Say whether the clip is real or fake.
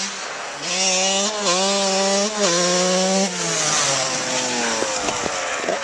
real